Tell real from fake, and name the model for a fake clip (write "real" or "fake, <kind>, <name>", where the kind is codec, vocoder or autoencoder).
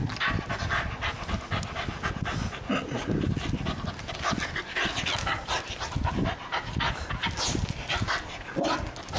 real